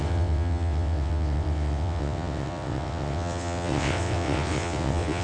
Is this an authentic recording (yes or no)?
no